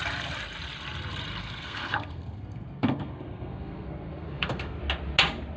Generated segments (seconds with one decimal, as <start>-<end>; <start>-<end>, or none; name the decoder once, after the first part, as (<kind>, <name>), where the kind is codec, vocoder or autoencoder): 1.4-4.8 (codec, SNAC)